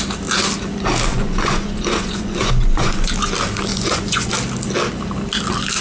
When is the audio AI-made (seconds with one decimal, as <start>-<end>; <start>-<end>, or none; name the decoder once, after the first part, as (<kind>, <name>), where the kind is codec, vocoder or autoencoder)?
1.1-3.1 (vocoder, Vocos); 3.7-4.3